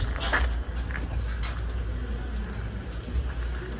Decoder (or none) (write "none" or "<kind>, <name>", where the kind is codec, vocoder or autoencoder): none